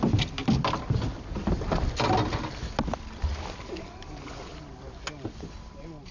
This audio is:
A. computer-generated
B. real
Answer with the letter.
B